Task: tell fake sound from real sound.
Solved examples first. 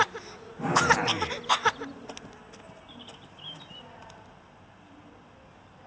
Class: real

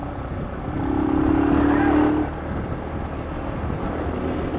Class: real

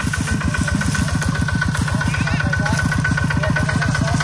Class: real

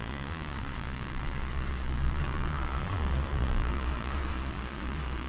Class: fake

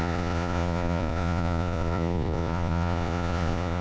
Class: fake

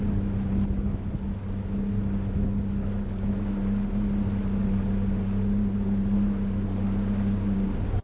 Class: real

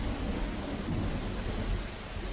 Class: real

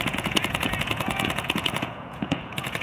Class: fake